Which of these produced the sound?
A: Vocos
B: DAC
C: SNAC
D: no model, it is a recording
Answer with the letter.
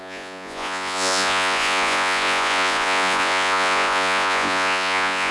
A